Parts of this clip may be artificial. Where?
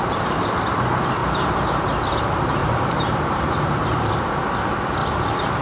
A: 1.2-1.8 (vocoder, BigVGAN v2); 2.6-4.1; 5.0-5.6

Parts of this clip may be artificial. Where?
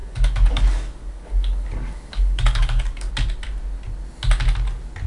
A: 0.0-3.1 (codec, DAC)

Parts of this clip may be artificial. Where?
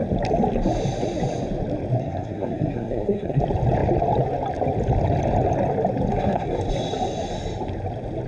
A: 2.0-3.4 (codec, SNAC); 6.1-6.6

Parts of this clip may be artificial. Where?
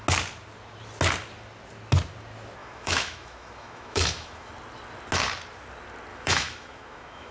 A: 2.6-4.5 (autoencoder, DAC-VAE); 6.1-7.3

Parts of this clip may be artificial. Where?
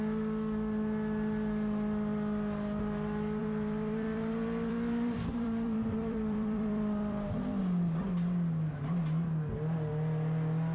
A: 3.4-7.6 (vocoder, BigVGAN v2)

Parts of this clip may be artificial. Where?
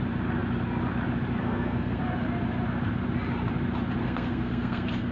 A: 1.4-2.0 (codec, SNAC); 4.0-5.1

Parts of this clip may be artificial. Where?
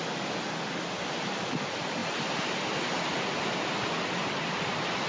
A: none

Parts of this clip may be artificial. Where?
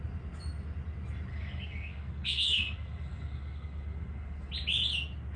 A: 1.3-4.5 (codec, SNAC)